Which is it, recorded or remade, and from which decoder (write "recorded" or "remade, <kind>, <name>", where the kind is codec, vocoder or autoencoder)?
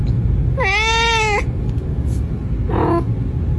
recorded